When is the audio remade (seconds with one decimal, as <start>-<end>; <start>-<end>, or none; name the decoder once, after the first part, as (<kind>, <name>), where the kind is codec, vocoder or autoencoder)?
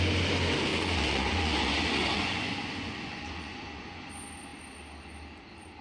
0.7-4.1 (vocoder, Vocos)